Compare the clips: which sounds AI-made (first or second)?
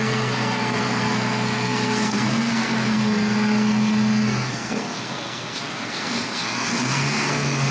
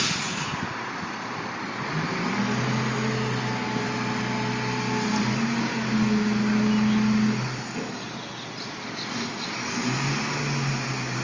first